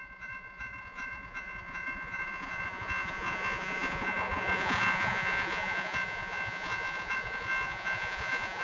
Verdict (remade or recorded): remade